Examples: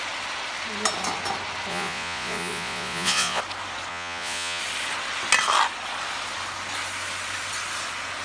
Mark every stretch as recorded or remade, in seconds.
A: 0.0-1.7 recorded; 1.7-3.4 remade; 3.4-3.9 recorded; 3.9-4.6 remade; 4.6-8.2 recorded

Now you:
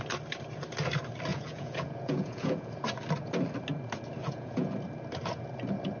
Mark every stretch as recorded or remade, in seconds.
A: 0.0-1.3 recorded; 1.3-2.7 remade; 2.7-4.2 recorded; 4.2-4.7 remade; 4.7-6.0 recorded